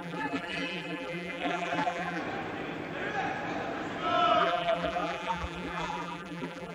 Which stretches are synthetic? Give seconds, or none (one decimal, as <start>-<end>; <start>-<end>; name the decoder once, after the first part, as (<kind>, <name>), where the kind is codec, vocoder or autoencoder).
0.0-2.2 (vocoder, BigVGAN v2); 4.4-6.7